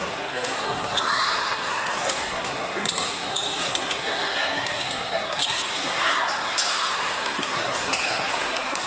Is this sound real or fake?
fake